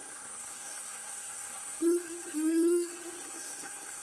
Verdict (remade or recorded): remade